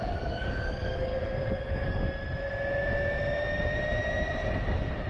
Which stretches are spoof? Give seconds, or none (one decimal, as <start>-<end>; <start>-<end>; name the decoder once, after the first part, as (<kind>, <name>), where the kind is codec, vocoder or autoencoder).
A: 0.0-1.1 (codec, DAC); 1.6-2.0